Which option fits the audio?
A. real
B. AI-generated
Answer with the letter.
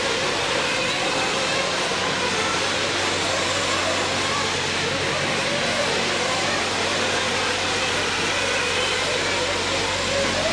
A